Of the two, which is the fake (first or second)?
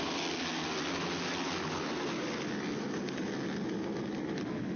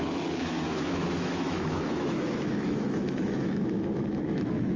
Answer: second